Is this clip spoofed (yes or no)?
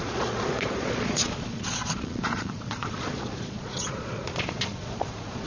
yes